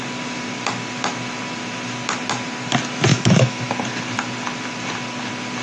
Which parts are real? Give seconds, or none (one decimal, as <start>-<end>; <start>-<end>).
0.0-3.1; 3.7-5.6